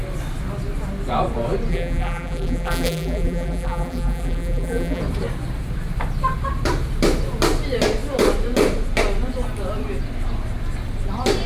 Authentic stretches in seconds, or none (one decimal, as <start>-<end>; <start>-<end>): 0.0-1.7; 5.0-11.5